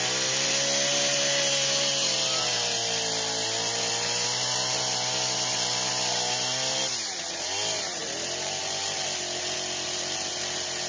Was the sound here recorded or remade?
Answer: recorded